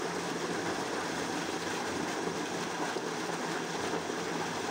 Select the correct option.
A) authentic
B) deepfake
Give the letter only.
A